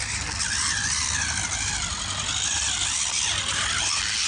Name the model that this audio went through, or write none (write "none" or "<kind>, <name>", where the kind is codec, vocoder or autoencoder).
none